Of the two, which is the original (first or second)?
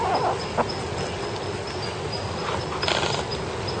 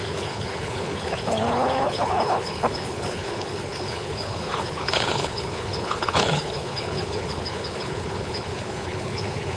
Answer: first